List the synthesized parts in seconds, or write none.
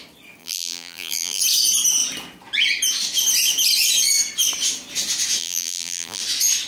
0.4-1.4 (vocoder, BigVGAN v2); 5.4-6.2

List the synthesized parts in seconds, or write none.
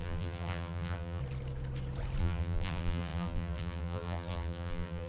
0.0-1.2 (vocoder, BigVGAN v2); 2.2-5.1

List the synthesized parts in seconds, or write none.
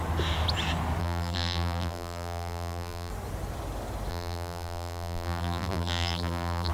1.0-3.1 (vocoder, BigVGAN v2); 4.1-6.7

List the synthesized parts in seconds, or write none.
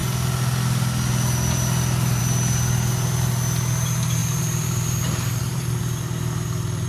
4.2-5.8 (vocoder, BigVGAN v2)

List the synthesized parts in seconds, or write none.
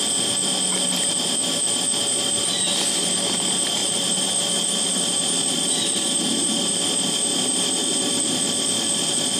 3.8-5.8 (vocoder, BigVGAN v2)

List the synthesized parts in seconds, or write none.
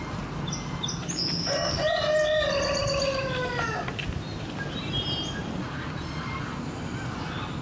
4.3-5.4 (vocoder, BigVGAN v2)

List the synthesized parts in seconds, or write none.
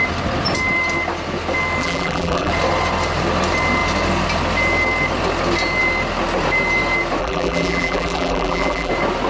1.8-2.5 (vocoder, BigVGAN v2); 7.2-8.9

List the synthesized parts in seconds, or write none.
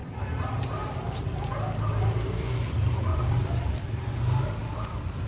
0.0-2.7 (vocoder, BigVGAN v2); 3.1-4.1; 4.6-5.3